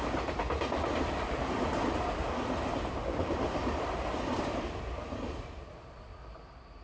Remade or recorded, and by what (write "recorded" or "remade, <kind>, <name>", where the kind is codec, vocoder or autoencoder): recorded